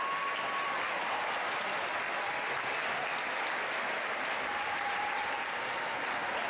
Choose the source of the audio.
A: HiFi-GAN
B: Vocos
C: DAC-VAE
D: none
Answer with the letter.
D